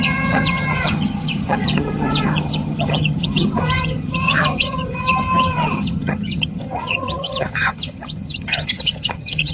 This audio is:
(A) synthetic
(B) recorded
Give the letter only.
A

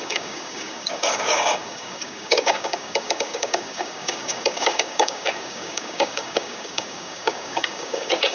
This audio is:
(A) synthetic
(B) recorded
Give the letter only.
A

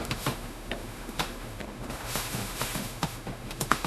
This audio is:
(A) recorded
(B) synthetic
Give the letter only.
B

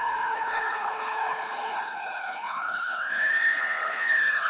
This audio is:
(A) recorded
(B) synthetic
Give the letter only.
B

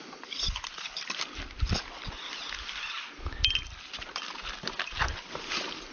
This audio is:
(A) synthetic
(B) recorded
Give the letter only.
B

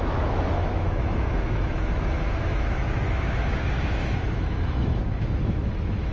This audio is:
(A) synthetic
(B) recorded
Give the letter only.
A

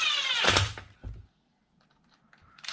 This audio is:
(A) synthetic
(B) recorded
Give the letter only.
B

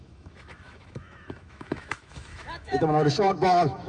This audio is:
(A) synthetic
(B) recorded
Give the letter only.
A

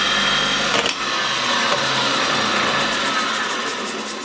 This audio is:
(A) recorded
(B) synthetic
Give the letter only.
A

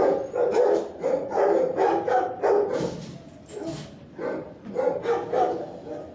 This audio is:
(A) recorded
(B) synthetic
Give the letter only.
A